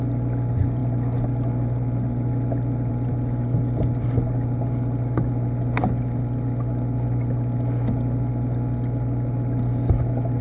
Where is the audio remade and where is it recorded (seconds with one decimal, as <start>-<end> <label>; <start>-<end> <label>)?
0.0-10.4 recorded